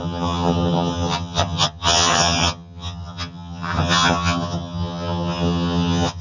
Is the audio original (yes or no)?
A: no